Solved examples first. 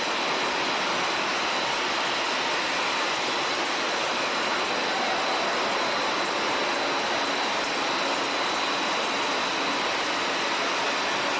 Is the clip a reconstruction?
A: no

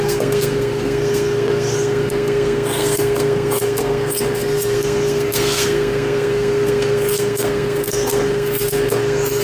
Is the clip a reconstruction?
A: yes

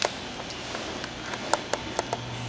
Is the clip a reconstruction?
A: no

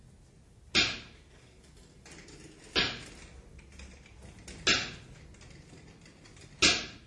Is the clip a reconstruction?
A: no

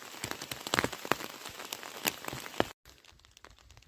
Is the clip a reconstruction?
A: no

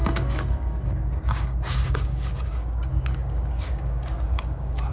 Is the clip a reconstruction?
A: yes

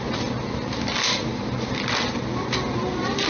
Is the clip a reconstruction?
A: no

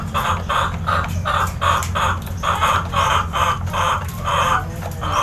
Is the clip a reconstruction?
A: no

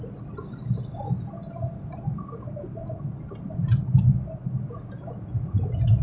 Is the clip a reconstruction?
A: no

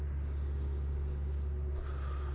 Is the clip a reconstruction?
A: no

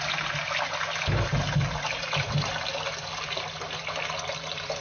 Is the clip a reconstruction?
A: no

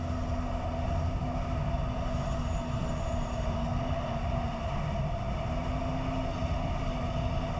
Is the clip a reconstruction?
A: no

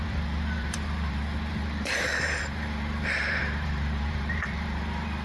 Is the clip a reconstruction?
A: yes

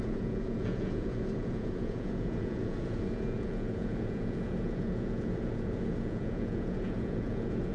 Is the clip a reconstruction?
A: yes